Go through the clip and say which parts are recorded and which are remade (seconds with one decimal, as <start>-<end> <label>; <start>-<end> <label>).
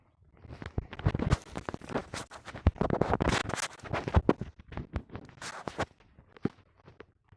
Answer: 0.0-7.4 recorded